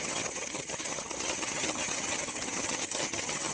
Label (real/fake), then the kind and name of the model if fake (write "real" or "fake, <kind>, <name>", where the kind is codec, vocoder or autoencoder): fake, vocoder, HiFi-GAN